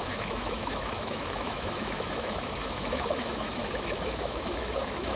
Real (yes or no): no